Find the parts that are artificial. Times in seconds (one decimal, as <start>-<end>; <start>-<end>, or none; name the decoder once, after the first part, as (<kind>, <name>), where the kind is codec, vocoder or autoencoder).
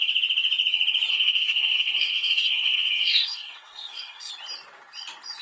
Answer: 1.1-4.3 (codec, SNAC)